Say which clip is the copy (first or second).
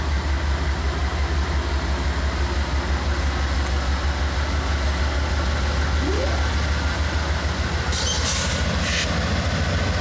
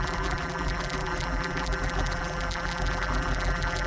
second